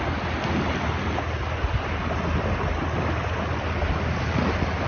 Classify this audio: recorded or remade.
recorded